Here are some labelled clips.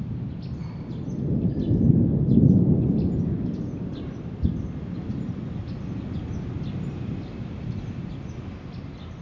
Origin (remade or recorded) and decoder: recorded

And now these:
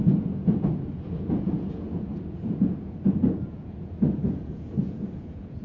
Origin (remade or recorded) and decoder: remade, vocoder, Vocos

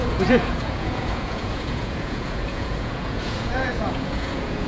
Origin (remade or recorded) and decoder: remade, vocoder, Vocos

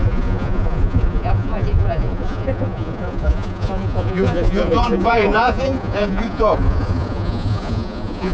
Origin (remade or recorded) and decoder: remade, vocoder, Vocos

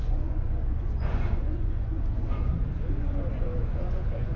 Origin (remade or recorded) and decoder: remade, vocoder, Vocos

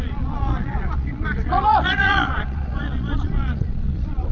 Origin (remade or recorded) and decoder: remade, vocoder, Vocos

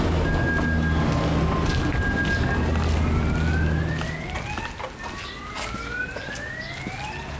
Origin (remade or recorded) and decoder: recorded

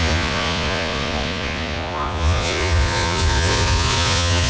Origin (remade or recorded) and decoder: remade, vocoder, Vocos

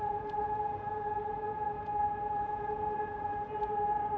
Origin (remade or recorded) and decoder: remade, vocoder, Vocos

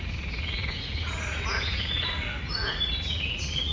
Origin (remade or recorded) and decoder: remade, vocoder, Vocos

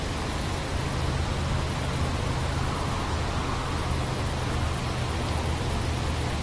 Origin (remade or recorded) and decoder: recorded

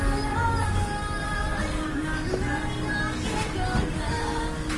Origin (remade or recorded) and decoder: recorded